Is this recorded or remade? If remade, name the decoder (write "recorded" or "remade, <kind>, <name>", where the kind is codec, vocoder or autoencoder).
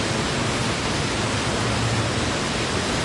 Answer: recorded